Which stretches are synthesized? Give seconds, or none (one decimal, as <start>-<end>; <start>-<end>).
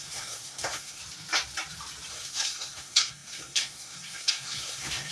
0.0-1.0; 2.1-5.1